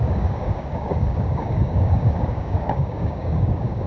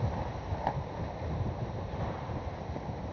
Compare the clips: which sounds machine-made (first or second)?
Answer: first